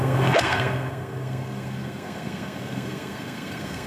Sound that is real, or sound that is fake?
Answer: fake